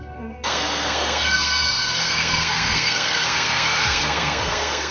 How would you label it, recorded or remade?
remade